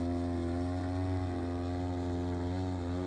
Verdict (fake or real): real